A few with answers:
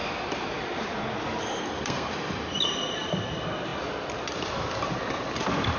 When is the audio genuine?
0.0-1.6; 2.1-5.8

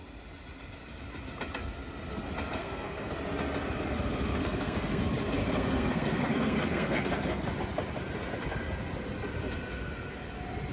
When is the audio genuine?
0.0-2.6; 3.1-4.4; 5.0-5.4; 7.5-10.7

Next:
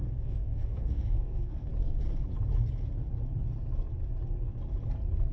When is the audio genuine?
1.7-5.3

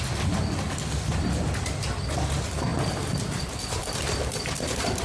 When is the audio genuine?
0.0-5.0